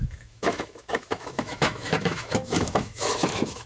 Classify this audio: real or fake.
fake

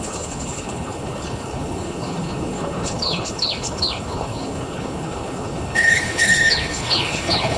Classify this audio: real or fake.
fake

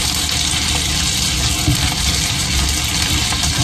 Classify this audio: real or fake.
real